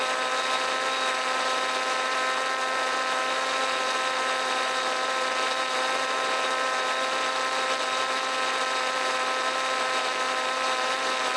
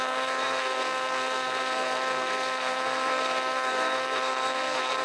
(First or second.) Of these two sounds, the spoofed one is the second